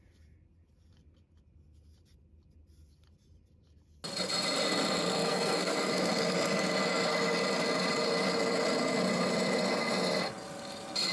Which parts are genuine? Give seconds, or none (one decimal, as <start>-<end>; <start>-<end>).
0.0-5.2; 5.9-11.1